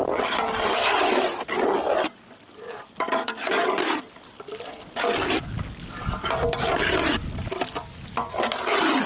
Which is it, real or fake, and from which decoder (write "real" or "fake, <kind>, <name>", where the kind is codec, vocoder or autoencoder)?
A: real